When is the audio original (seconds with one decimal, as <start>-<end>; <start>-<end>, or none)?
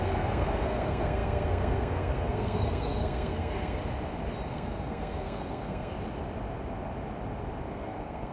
3.8-4.5; 5.9-7.7